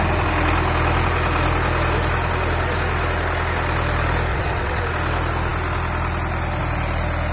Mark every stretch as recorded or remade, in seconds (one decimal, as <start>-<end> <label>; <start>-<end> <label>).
0.0-4.3 recorded; 4.3-4.8 remade; 4.8-7.3 recorded